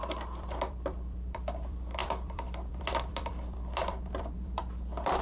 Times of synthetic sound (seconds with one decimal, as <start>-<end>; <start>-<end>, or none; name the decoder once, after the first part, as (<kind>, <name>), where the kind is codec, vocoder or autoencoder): 0.0-5.2 (vocoder, BigVGAN v2)